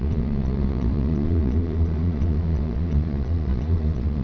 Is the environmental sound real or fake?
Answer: fake